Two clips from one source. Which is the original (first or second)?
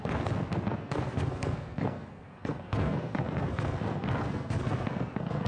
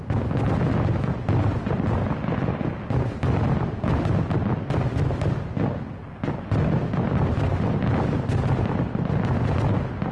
second